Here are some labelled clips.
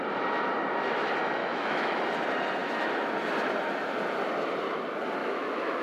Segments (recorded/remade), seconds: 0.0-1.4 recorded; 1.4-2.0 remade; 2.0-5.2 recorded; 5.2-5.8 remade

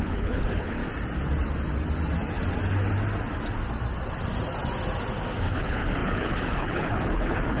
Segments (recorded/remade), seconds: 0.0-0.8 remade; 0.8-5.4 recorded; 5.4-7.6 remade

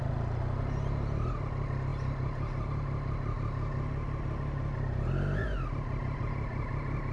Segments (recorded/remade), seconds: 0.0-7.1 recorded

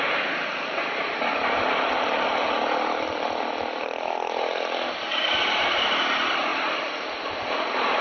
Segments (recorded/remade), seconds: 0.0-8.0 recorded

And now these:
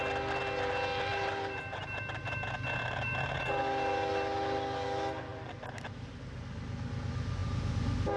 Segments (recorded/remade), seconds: 0.0-1.1 recorded; 1.1-3.4 remade; 3.4-8.2 recorded

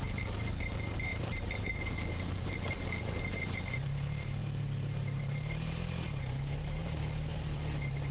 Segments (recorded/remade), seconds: 0.0-8.1 remade

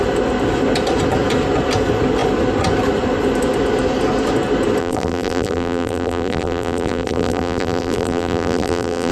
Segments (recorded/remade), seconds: 0.0-4.8 recorded; 4.8-9.1 remade